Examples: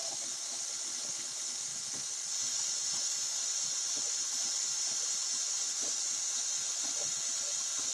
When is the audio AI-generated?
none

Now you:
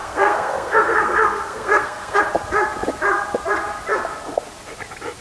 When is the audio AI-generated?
0.0-2.2